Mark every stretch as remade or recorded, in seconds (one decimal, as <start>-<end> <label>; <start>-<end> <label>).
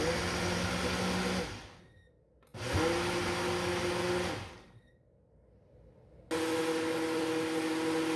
0.0-8.2 recorded